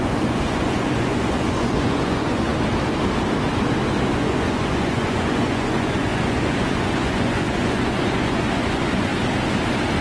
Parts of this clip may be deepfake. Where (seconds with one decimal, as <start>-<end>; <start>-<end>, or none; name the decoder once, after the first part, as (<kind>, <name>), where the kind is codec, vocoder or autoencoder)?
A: 0.0-2.5 (vocoder, Vocos); 4.1-9.1